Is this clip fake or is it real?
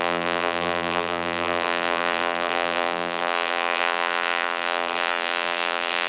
fake